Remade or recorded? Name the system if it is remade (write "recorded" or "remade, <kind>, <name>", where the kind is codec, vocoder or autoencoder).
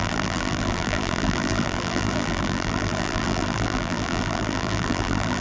remade, vocoder, BigVGAN v2